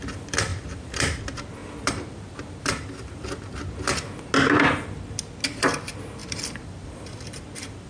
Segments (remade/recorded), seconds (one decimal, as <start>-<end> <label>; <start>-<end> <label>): 0.0-0.5 recorded; 0.5-1.2 remade; 1.2-1.6 recorded; 1.6-3.6 remade; 3.6-6.2 recorded; 6.2-7.9 remade